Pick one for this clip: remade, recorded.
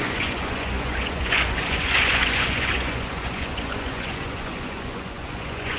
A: remade